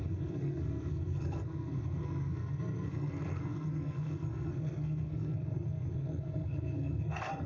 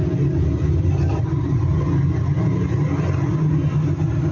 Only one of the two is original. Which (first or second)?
second